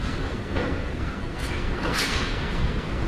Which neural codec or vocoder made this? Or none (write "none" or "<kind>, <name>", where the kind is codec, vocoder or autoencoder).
codec, SNAC